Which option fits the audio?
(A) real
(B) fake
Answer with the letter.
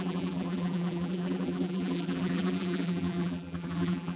B